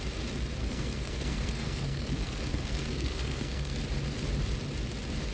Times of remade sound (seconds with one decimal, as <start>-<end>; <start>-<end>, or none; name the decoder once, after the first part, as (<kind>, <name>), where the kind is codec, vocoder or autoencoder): 0.6-3.8 (codec, SNAC)